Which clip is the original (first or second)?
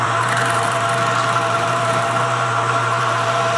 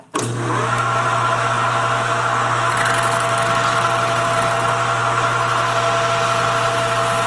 second